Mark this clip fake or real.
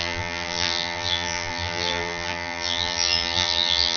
fake